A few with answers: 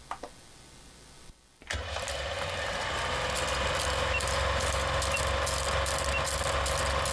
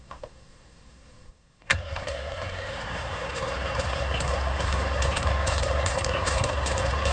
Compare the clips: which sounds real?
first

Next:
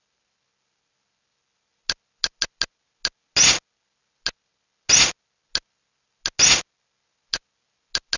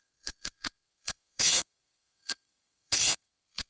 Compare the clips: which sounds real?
first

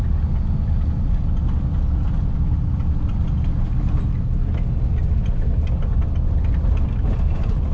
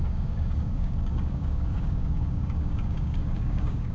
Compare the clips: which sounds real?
first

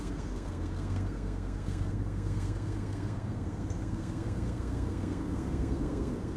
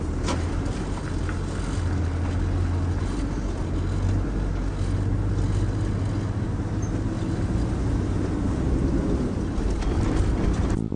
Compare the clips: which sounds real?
second